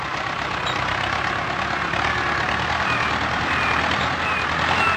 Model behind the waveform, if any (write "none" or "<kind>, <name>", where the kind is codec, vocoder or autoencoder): none